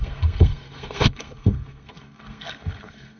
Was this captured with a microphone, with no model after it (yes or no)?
no